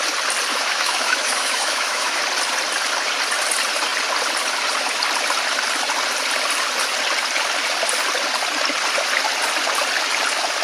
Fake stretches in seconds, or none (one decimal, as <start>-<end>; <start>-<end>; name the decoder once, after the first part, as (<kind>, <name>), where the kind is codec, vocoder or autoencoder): 0.5-2.2 (autoencoder, DAC-VAE)